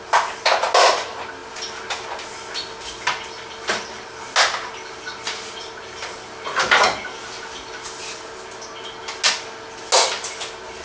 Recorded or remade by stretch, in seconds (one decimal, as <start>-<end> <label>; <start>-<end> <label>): 0.0-10.8 recorded